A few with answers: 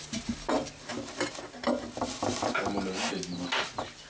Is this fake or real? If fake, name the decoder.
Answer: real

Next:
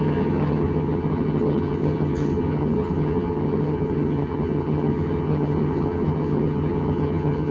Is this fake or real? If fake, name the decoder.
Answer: fake, vocoder, HiFi-GAN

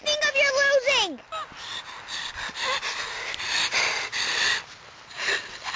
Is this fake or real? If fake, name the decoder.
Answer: real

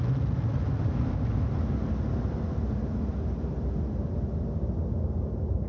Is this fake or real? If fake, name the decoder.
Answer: real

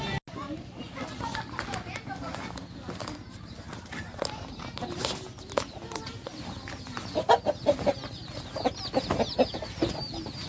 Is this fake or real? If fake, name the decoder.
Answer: real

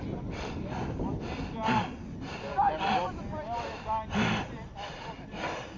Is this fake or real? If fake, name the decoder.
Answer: real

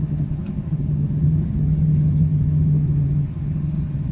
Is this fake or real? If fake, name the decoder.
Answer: fake, vocoder, HiFi-GAN